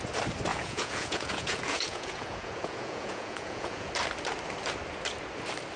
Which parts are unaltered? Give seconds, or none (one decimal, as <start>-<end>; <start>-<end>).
0.0-0.5; 3.9-5.8